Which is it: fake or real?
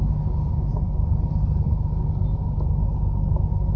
real